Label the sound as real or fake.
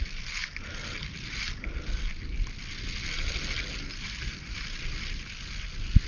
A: real